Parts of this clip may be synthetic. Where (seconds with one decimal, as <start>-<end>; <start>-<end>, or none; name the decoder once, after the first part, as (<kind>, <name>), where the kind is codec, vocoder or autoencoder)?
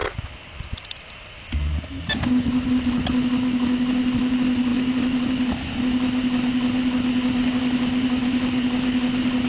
none